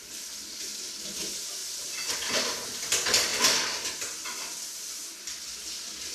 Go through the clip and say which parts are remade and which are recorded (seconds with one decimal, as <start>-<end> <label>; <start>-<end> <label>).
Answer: 0.0-0.7 remade; 0.7-1.2 recorded; 1.2-3.3 remade; 3.3-5.2 recorded; 5.2-6.1 remade